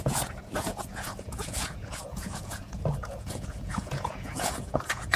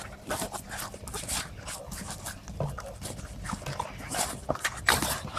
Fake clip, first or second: first